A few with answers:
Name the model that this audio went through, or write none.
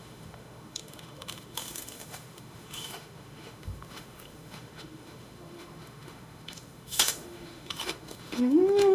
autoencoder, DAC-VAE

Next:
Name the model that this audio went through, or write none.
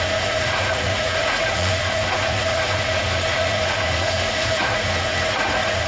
vocoder, Vocos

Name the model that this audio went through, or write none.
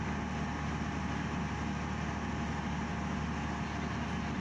none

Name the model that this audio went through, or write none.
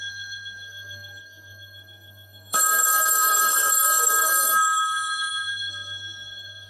codec, SNAC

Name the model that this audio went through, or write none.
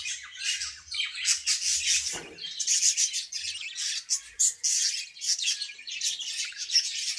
none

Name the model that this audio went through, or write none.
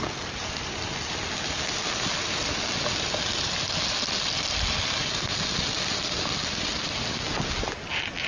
none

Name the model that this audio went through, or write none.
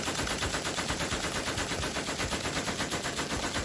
none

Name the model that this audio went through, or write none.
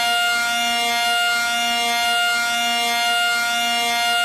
none